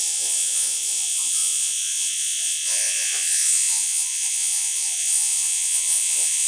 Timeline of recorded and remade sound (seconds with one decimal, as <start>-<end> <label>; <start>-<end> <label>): 0.0-6.5 remade